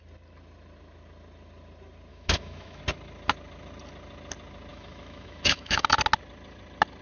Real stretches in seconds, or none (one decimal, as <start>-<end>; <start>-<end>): 0.0-2.1; 2.8-4.7; 5.9-7.0